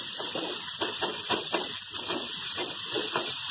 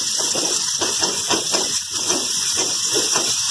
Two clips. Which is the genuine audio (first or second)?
first